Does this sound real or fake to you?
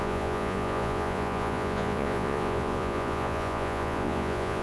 fake